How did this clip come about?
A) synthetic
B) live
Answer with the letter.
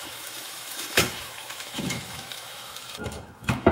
A